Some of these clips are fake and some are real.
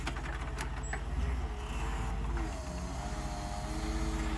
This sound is real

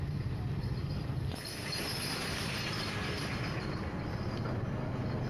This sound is real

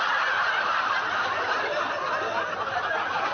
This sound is real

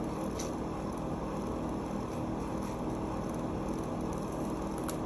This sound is real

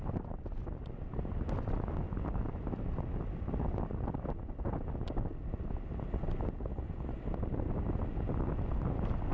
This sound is real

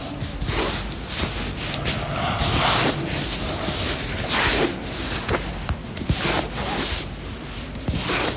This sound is real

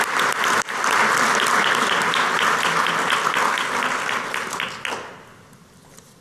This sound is real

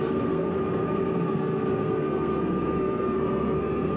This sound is fake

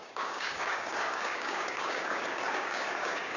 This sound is fake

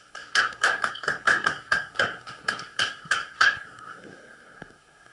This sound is fake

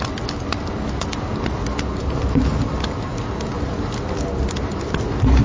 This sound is real